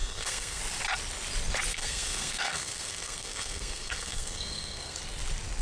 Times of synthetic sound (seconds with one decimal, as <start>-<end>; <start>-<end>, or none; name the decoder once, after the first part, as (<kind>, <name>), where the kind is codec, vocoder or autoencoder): 0.0-0.6 (codec, SNAC); 1.7-5.0